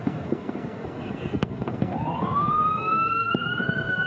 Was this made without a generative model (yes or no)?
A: no